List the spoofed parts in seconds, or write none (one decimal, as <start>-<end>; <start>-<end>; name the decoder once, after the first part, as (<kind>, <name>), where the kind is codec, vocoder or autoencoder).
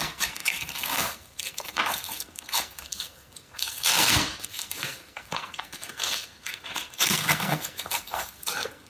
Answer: 0.0-8.9 (codec, SNAC)